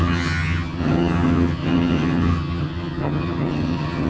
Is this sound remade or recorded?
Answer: remade